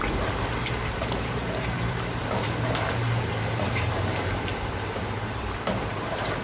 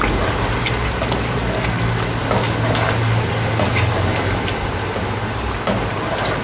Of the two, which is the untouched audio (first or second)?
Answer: second